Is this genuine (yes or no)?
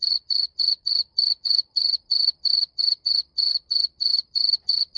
no